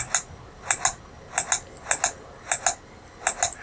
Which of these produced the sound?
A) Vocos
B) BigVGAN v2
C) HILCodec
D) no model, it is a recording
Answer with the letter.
D